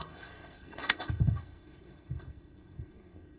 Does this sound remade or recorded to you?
remade